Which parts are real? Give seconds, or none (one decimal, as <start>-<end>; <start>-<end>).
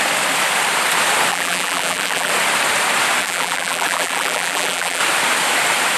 0.0-1.3; 2.3-3.2; 5.0-6.0